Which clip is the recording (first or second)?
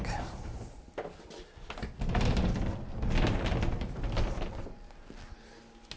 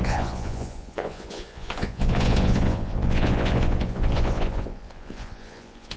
first